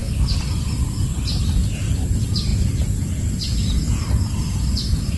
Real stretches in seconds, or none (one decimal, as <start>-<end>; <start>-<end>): 0.0-5.2